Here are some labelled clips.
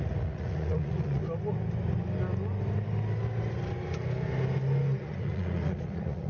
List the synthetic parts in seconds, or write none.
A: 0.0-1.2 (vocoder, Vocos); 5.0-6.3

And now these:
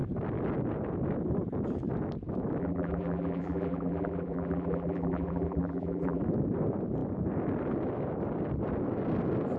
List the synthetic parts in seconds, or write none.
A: 2.6-6.2 (vocoder, BigVGAN v2)

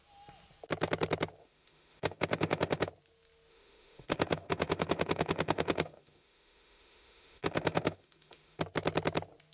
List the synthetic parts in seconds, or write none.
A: 1.4-2.9 (autoencoder, DAC-VAE); 3.5-8.6